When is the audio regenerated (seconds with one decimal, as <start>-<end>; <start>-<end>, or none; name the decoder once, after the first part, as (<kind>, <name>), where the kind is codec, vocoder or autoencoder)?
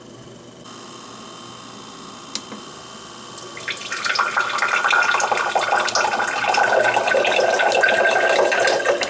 none